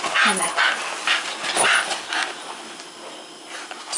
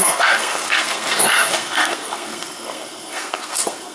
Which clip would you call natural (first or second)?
first